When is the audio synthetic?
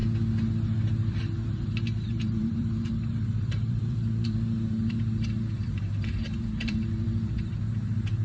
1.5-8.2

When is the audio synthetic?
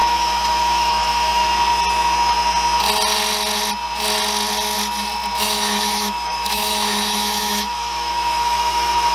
0.0-1.4; 5.4-9.1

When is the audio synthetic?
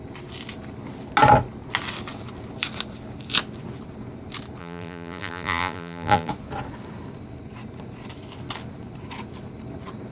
4.6-6.3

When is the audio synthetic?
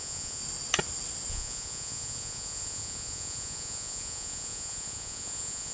0.0-0.4; 1.3-5.7